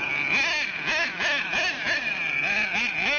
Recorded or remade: recorded